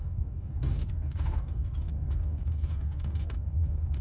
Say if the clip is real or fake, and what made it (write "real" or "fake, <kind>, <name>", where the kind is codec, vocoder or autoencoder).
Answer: fake, codec, DAC